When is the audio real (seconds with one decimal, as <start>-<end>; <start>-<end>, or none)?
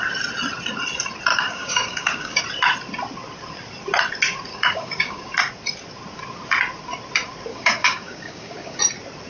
0.0-1.3; 2.4-4.5; 5.3-7.5; 8.8-9.3